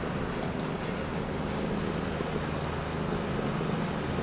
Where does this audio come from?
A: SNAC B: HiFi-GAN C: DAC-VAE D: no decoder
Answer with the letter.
D